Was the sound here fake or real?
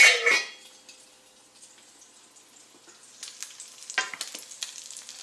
real